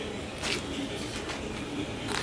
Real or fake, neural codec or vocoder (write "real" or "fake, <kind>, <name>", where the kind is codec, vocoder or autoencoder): real